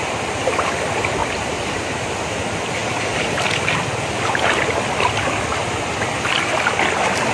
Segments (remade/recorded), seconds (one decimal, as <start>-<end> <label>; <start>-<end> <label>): 0.0-1.2 recorded; 1.2-2.0 remade; 2.0-7.3 recorded